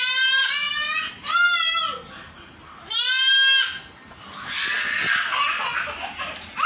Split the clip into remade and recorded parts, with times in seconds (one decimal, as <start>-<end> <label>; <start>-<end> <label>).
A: 0.0-0.6 recorded; 0.6-1.1 remade; 1.1-6.7 recorded